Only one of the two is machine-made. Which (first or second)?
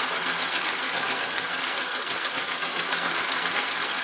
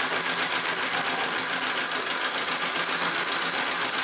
first